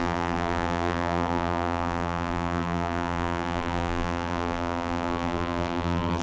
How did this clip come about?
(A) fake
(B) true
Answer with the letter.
A